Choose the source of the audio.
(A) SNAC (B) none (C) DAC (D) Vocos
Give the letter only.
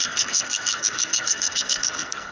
A